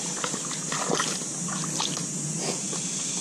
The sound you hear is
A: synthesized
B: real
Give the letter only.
B